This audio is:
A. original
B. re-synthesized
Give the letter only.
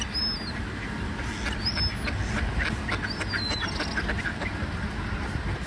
A